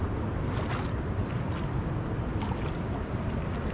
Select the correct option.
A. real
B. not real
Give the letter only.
A